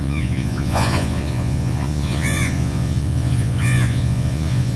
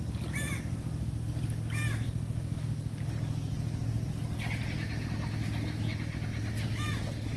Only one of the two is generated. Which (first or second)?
first